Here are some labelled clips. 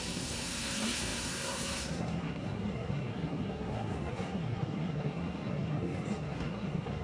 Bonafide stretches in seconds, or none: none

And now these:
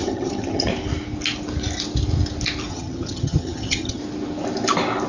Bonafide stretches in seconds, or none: 0.7-2.7; 4.0-5.1

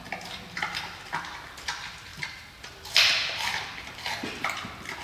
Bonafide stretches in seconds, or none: 0.0-5.0